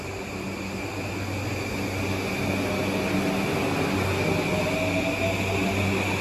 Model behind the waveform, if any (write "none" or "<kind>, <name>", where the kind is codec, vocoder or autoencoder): none